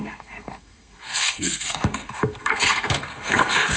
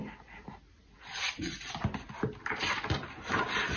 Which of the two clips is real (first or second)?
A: second